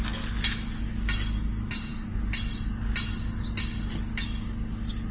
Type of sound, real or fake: real